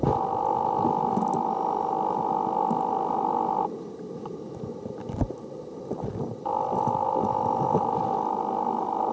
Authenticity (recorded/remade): recorded